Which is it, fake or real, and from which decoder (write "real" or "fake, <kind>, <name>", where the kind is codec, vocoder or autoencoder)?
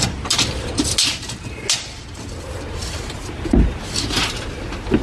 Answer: real